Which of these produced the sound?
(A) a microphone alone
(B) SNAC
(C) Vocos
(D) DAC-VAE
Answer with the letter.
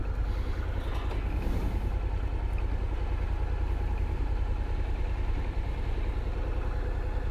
A